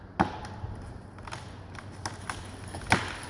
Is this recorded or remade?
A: recorded